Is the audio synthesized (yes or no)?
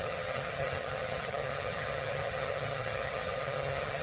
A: yes